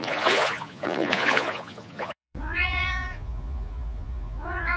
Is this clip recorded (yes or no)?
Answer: no